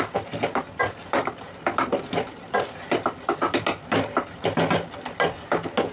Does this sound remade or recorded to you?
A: recorded